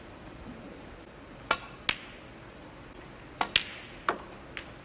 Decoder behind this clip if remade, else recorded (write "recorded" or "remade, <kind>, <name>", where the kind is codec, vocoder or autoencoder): recorded